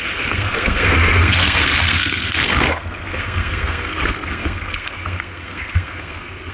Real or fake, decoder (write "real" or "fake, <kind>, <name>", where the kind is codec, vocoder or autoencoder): fake, codec, SNAC